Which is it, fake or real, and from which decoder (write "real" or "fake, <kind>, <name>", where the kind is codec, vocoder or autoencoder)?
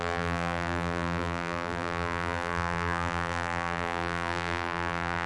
fake, vocoder, BigVGAN v2